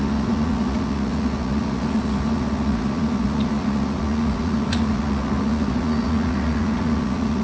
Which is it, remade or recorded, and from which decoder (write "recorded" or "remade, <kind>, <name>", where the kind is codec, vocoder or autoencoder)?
remade, vocoder, Vocos